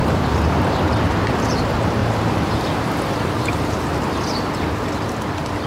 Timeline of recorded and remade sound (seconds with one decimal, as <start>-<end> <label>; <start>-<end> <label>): 0.0-0.9 remade; 0.9-2.0 recorded; 2.0-2.9 remade; 2.9-5.7 recorded